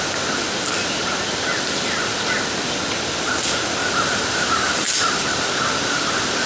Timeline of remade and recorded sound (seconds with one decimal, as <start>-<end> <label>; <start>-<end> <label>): 0.0-6.5 recorded